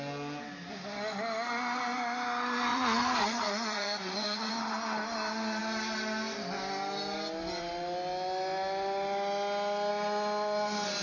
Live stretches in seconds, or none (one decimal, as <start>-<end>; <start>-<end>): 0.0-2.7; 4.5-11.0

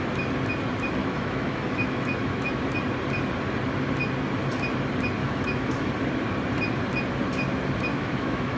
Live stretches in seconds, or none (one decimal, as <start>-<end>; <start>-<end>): 0.0-1.0; 2.6-5.2; 5.9-7.9

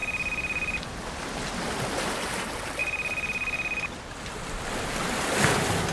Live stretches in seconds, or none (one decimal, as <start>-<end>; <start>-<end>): 0.0-5.9

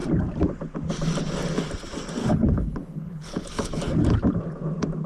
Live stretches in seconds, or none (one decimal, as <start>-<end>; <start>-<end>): 0.0-2.2; 3.8-5.1

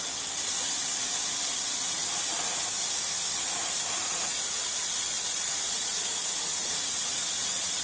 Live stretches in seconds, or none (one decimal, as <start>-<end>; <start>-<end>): 0.0-4.0

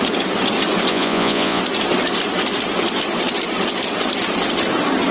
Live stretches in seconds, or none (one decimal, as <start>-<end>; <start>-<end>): 0.0-0.9; 1.6-5.1

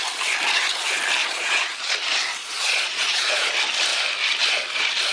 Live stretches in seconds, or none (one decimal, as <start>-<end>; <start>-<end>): 0.0-1.2; 1.7-2.3; 3.5-5.1

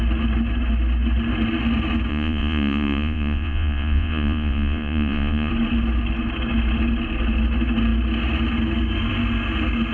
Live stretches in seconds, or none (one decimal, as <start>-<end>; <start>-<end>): 0.0-2.1; 5.5-9.9